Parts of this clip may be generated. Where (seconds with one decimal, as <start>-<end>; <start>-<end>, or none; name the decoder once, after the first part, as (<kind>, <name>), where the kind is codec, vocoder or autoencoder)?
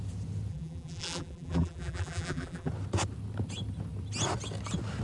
0.5-2.7 (vocoder, BigVGAN v2)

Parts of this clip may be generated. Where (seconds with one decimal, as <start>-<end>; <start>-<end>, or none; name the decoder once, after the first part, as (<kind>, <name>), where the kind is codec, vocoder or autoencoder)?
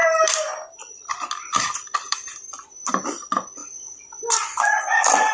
0.0-0.8 (vocoder, BigVGAN v2); 2.3-2.9; 3.6-4.8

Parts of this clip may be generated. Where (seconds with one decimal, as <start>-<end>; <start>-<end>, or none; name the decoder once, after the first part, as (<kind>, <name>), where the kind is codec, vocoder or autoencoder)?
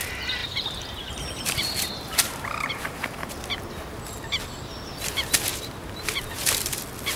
0.4-3.3 (vocoder, BigVGAN v2); 5.5-6.8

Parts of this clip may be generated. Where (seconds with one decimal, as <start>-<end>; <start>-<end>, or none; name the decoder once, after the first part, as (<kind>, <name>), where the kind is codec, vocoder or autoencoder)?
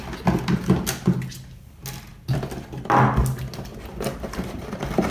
none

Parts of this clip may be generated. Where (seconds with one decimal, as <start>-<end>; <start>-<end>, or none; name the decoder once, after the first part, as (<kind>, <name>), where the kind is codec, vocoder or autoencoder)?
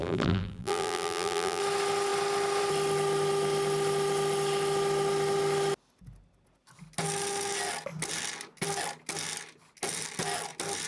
0.0-1.6 (vocoder, BigVGAN v2)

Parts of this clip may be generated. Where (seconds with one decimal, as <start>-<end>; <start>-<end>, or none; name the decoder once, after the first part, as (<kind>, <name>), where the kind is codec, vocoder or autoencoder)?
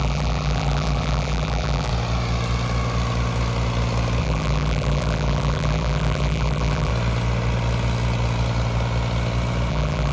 0.0-1.9 (vocoder, BigVGAN v2); 4.2-6.9; 9.7-10.1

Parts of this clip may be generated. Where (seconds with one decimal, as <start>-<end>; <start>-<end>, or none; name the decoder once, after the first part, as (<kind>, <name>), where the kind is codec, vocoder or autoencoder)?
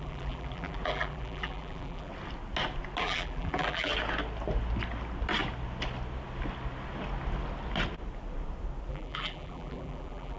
0.0-2.1 (vocoder, BigVGAN v2); 3.0-3.9; 8.9-10.4